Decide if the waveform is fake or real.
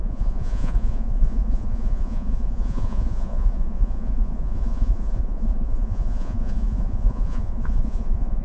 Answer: fake